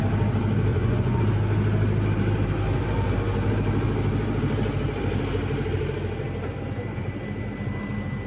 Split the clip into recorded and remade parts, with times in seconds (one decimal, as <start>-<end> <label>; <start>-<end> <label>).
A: 0.0-0.7 recorded; 0.7-1.2 remade; 1.2-8.3 recorded